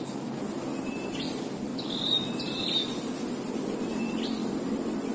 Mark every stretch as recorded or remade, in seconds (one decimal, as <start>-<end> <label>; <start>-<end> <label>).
0.0-5.1 recorded